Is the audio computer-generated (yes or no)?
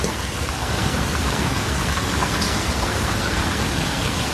yes